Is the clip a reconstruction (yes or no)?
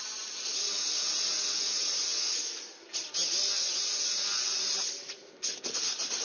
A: no